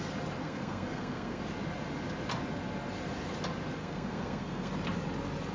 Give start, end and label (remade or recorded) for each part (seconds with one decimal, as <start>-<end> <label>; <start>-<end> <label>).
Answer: 0.0-0.4 recorded; 0.4-1.4 remade; 1.4-3.8 recorded; 3.8-4.7 remade; 4.7-5.5 recorded